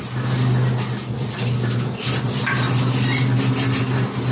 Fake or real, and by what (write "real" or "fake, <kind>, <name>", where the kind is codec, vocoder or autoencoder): real